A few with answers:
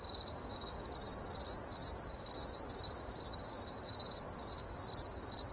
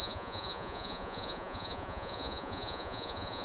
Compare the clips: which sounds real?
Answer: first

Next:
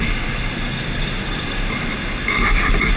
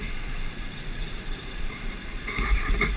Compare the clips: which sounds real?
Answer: first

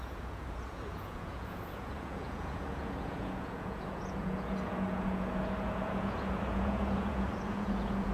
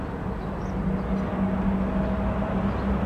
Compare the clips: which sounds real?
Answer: second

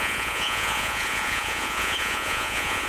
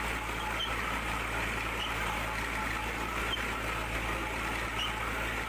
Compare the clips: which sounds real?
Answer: second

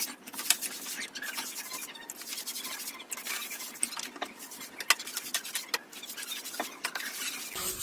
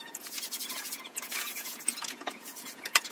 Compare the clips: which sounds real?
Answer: first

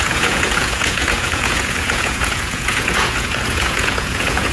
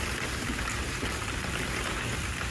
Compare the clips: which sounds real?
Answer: second